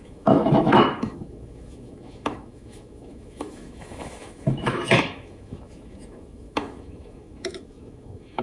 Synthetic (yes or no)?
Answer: yes